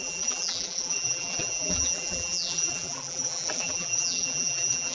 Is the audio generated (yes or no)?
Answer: yes